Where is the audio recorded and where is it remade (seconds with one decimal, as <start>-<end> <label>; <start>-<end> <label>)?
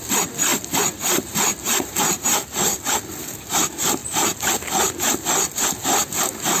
0.0-6.6 recorded